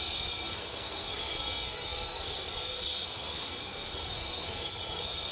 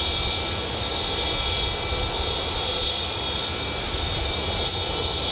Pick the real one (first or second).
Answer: second